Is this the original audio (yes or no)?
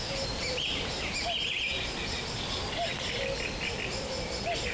yes